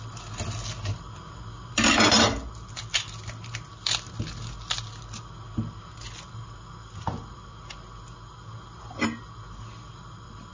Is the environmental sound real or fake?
real